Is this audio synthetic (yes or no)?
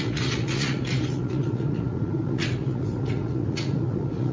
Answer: yes